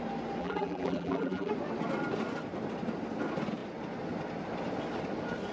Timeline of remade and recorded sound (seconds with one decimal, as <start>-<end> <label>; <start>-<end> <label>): 0.0-0.4 recorded; 0.4-1.5 remade; 1.5-5.5 recorded